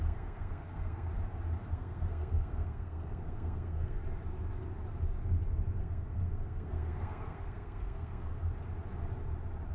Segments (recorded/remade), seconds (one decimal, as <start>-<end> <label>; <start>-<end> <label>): 0.0-1.1 remade; 1.1-1.7 recorded; 1.7-4.0 remade; 4.0-5.8 recorded; 5.8-8.5 remade; 8.5-9.7 recorded